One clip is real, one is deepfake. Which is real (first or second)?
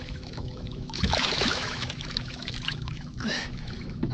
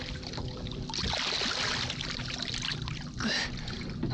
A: second